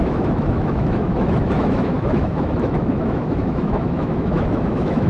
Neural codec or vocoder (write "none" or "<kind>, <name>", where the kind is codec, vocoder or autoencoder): autoencoder, DAC-VAE